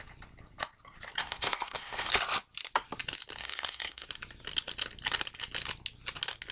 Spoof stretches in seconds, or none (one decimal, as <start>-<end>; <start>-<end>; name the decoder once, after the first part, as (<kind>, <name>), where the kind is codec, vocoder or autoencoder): 1.2-2.1 (codec, SNAC); 3.4-4.1